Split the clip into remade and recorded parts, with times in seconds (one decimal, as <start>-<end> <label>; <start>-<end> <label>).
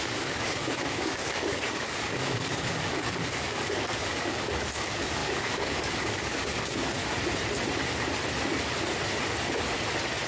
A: 0.0-7.0 remade; 7.0-10.3 recorded